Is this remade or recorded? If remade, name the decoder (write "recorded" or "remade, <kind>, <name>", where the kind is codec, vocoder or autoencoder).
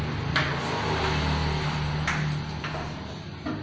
recorded